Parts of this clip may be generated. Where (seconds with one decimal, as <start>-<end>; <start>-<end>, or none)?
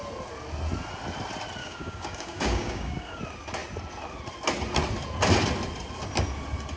1.6-3.2